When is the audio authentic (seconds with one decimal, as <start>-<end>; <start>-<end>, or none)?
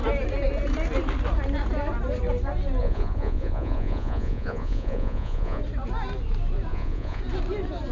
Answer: 0.0-2.8; 5.6-6.7; 7.2-7.9